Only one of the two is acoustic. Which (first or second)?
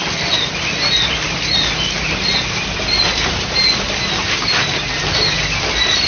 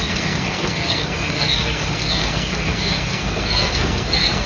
first